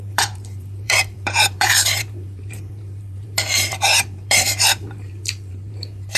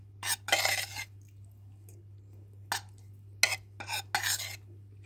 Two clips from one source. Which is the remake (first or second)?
first